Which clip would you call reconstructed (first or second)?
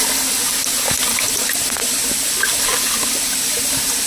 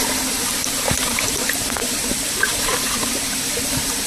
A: second